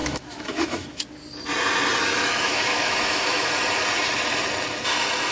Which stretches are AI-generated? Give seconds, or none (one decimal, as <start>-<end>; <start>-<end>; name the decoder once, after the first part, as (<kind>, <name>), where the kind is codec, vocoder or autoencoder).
0.0-1.0 (autoencoder, DAC-VAE); 2.2-3.5